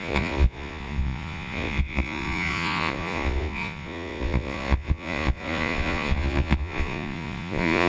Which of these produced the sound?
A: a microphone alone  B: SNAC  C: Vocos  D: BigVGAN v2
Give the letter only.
C